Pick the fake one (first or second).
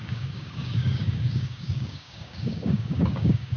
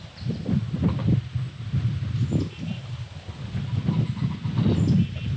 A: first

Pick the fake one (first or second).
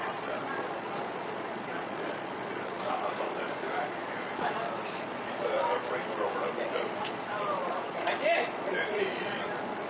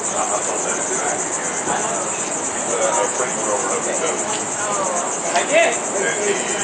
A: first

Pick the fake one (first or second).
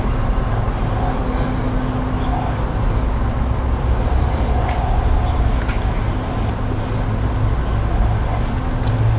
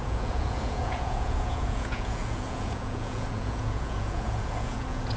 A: second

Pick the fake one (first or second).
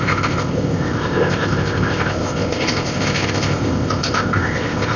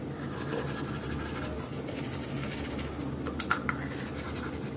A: first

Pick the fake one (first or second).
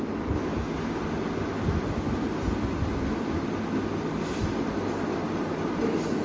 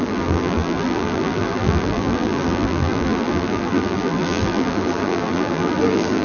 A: second